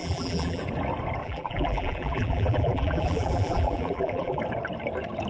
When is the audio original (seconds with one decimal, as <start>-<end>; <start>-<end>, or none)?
0.6-1.2; 4.4-5.3